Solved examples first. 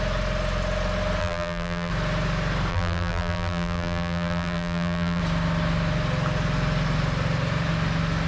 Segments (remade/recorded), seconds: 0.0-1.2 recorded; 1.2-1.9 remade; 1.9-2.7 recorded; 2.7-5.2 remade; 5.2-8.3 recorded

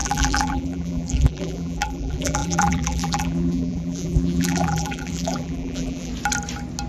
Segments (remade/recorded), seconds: 0.0-6.1 remade; 6.1-6.9 recorded

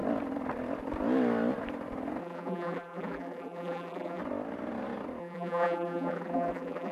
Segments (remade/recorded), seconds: 0.0-2.2 recorded; 2.2-4.2 remade; 4.2-5.2 recorded; 5.2-6.9 remade

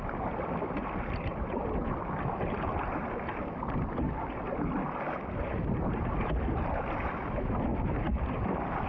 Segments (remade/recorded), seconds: 0.0-7.7 recorded; 7.7-8.5 remade; 8.5-8.9 recorded

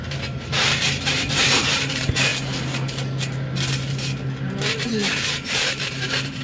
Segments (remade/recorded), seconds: 0.0-0.5 remade; 0.5-1.1 recorded; 1.1-2.3 remade; 2.3-3.7 recorded; 3.7-6.4 remade

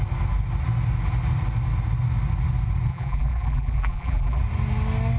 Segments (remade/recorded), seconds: 0.0-2.9 recorded; 2.9-4.4 remade; 4.4-5.2 recorded